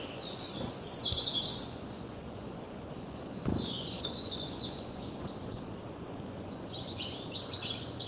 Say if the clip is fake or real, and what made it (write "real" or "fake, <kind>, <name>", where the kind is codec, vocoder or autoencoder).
fake, vocoder, Vocos